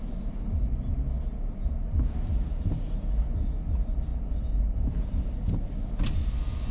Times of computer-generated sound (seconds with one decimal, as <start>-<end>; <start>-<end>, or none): 4.1-5.9